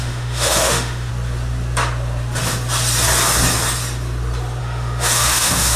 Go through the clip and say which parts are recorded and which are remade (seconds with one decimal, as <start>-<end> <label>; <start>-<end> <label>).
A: 0.0-1.1 remade; 1.1-4.6 recorded; 4.6-5.8 remade